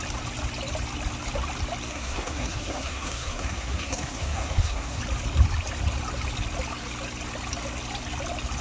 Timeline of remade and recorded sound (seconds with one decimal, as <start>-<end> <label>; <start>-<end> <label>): 0.0-1.9 recorded; 1.9-5.0 remade; 5.0-8.6 recorded